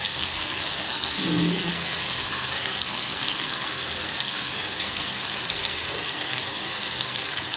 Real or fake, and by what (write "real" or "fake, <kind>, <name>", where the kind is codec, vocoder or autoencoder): fake, codec, SNAC